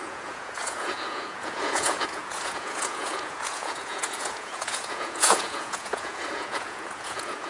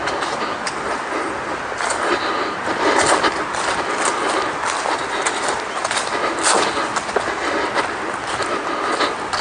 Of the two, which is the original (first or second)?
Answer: second